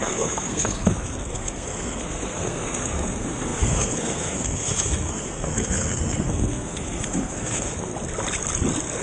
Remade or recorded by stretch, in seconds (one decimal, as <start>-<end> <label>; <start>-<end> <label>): 0.0-7.9 remade; 7.9-9.0 recorded